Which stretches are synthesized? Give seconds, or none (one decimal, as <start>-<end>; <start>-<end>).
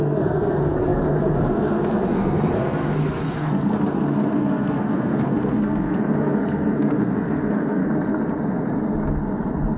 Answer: 0.0-7.8